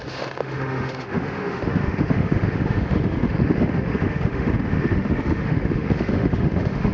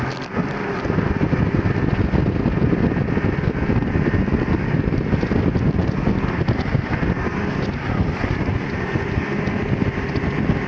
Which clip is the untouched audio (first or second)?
second